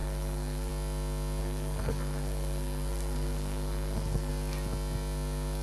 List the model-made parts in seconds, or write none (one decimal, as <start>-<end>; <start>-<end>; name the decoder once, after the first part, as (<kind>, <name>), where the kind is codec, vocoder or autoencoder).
0.0-0.7 (codec, SNAC); 1.4-4.3